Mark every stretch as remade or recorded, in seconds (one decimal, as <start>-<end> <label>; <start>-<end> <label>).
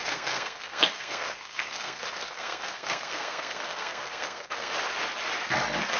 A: 0.0-4.7 remade; 4.7-6.0 recorded